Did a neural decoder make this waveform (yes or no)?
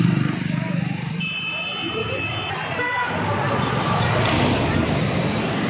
yes